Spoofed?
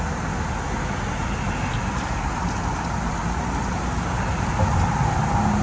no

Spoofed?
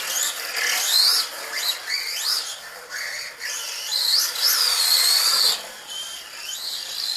no